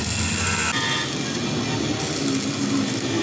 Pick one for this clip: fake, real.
real